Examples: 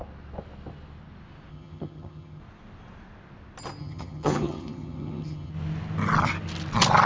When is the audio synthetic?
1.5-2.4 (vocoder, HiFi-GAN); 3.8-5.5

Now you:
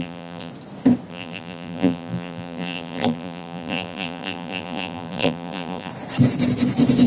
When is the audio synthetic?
0.0-0.5 (vocoder, BigVGAN v2); 1.1-5.9

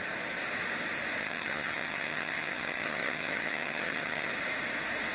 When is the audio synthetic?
1.2-4.3 (vocoder, HiFi-GAN)

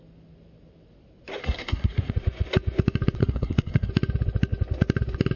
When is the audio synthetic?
1.4-2.1 (codec, SNAC); 3.2-3.9